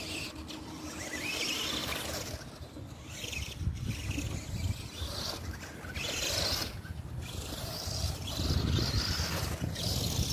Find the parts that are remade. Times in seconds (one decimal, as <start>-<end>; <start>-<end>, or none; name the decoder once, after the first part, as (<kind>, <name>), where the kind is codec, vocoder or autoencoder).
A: 1.8-3.6 (vocoder, BigVGAN v2)